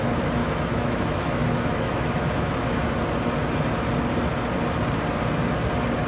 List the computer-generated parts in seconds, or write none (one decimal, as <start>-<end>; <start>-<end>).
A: 0.4-2.8